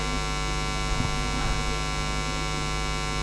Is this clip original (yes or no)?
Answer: yes